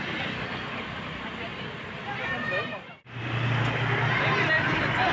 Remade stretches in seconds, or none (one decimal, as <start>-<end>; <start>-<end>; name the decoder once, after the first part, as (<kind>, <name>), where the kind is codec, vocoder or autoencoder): none